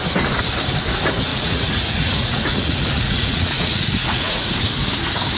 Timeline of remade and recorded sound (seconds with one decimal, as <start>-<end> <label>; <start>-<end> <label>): 0.0-1.3 recorded; 1.3-4.5 remade; 4.5-5.4 recorded